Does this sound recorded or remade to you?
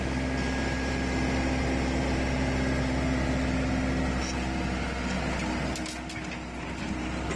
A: recorded